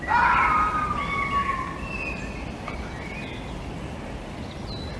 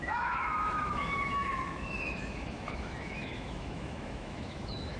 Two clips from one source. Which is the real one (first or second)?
first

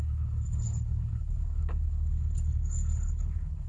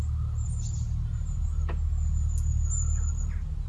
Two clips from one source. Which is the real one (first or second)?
second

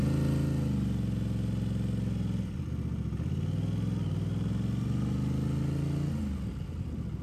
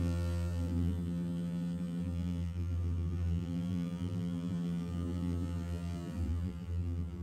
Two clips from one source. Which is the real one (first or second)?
first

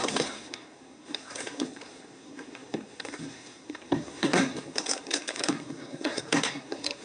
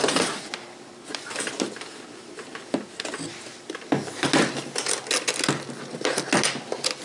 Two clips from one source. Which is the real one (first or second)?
second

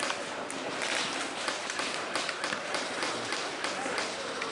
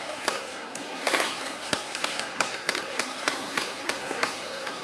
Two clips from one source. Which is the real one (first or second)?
first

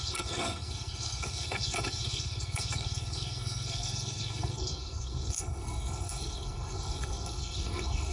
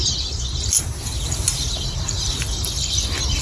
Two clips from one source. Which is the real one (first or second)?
second